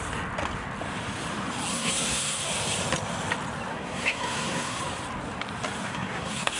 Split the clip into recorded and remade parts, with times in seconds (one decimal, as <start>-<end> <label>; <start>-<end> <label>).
0.0-1.7 recorded; 1.7-2.5 remade; 2.5-3.7 recorded; 3.7-4.8 remade; 4.8-5.8 recorded; 5.8-6.6 remade

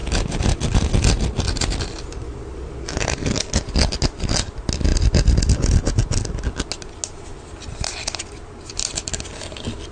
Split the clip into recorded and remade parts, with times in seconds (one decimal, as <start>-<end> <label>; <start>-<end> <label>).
0.0-9.9 recorded

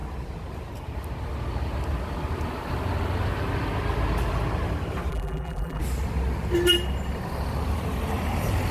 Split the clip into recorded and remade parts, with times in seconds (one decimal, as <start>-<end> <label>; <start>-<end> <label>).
0.0-5.1 recorded; 5.1-5.8 remade; 5.8-8.7 recorded

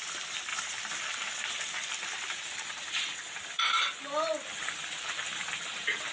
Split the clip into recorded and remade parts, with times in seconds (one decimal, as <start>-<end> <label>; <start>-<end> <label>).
0.0-0.5 recorded; 0.5-3.6 remade; 3.6-6.1 recorded

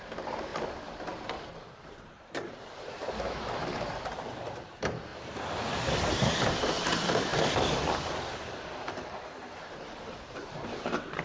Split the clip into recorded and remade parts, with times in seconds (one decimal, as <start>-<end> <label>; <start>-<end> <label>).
0.0-0.5 remade; 0.5-1.5 recorded; 1.5-5.1 remade; 5.1-6.1 recorded; 6.1-7.3 remade; 7.3-8.6 recorded; 8.6-11.2 remade

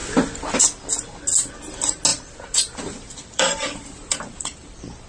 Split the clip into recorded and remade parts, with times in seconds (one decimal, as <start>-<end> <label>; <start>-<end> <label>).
0.0-2.1 recorded; 2.1-5.1 remade